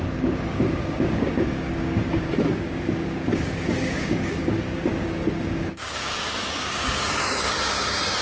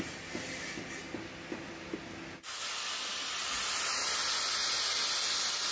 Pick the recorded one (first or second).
second